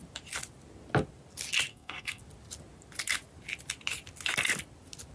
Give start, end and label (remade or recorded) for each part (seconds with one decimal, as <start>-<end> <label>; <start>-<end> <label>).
0.0-1.7 recorded; 1.7-2.2 remade; 2.2-5.1 recorded